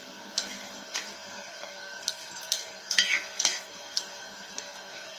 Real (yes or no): no